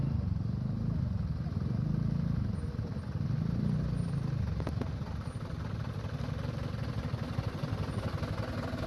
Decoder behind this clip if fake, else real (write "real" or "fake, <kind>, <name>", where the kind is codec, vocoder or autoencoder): real